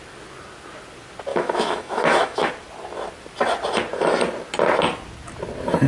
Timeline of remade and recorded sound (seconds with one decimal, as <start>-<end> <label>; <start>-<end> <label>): 0.0-1.3 recorded; 1.3-2.5 remade; 2.5-5.9 recorded